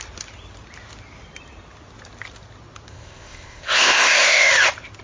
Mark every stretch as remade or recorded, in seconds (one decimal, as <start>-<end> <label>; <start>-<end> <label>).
0.0-2.9 recorded; 2.9-4.5 remade; 4.5-5.0 recorded